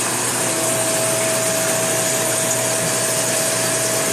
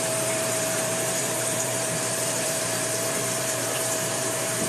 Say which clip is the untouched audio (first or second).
first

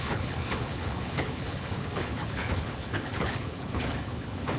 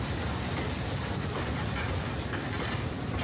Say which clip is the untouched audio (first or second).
second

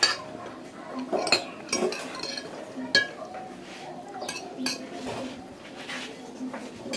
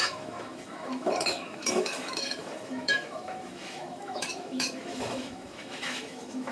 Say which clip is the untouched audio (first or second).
first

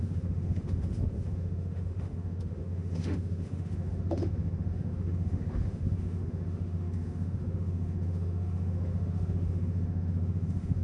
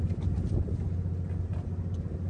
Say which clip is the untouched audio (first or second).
second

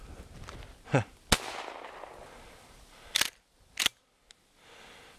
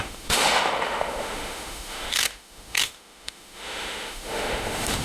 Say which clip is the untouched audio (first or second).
first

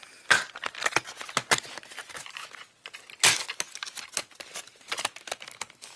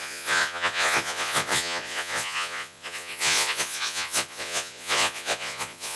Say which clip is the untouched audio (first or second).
first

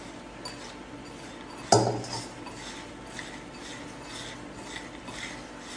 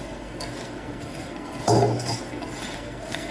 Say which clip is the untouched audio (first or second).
first